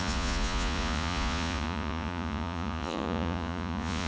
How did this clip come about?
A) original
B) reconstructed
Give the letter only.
B